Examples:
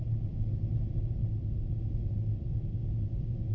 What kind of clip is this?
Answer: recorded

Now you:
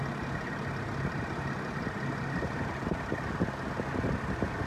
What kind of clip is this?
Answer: recorded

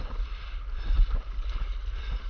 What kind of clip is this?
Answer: recorded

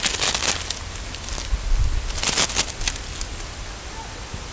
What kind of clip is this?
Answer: recorded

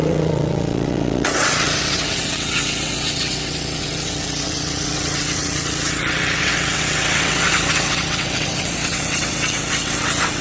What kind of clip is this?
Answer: remade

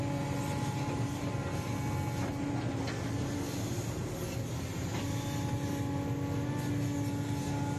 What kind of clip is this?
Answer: recorded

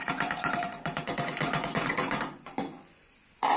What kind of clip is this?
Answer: remade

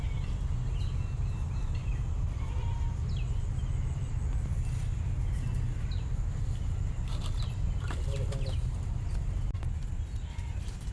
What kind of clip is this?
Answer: recorded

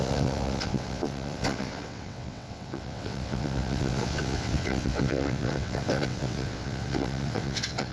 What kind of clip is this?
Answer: remade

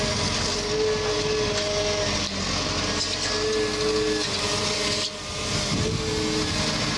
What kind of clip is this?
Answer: recorded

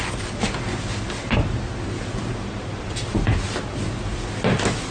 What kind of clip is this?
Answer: recorded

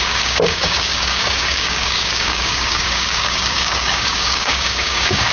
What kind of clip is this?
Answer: remade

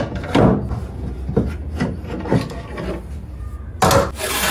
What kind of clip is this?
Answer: recorded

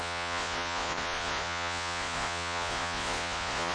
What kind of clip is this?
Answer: remade